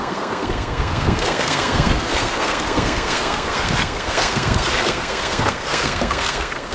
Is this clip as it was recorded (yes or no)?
no